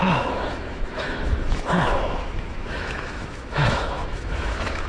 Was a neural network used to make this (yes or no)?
yes